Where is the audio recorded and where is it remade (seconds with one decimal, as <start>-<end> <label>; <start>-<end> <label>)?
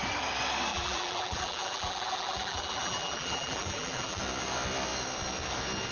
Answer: 0.0-0.7 recorded; 0.7-4.2 remade; 4.2-5.9 recorded